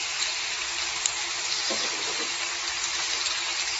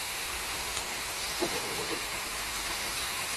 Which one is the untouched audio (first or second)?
first